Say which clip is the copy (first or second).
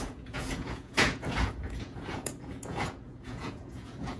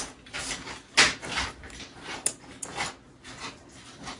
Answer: first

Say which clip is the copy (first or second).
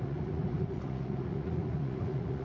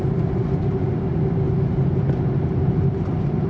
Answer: first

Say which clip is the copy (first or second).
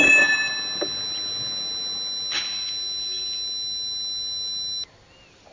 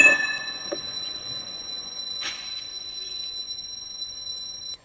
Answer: second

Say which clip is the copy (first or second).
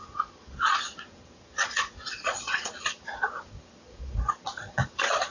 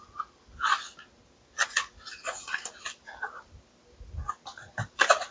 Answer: first